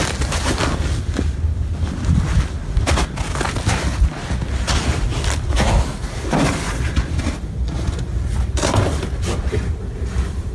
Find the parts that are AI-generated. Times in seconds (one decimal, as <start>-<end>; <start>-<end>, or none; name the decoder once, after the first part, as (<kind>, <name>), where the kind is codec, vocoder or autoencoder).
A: none